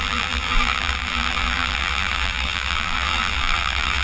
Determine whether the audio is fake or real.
fake